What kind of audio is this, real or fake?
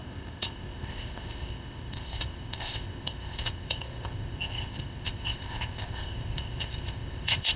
fake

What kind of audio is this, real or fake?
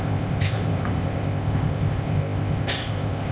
fake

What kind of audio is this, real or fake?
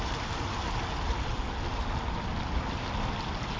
real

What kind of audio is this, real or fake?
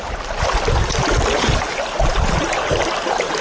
real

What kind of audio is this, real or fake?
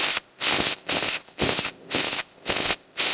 fake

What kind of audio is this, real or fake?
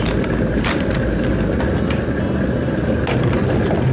real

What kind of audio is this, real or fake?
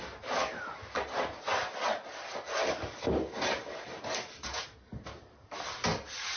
real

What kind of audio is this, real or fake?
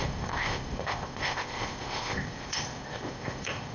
fake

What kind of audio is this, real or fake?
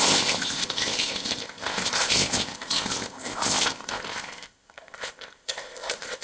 fake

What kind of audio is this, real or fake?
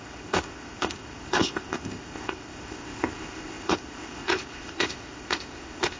fake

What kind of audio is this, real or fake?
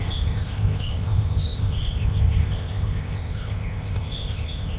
fake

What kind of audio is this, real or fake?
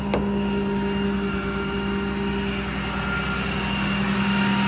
real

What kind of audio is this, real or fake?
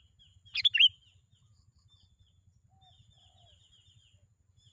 real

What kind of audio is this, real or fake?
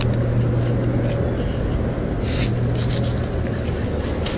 real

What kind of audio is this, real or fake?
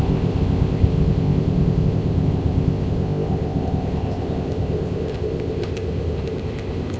fake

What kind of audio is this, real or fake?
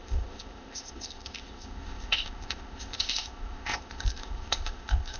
fake